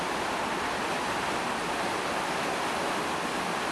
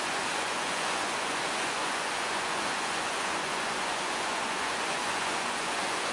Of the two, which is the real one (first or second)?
first